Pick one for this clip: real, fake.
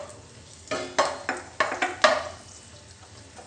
real